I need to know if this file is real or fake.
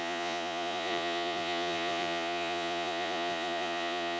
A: fake